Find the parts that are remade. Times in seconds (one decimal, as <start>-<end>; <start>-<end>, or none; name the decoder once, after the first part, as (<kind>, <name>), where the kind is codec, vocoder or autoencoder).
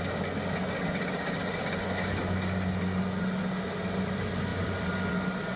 4.5-5.1 (vocoder, BigVGAN v2)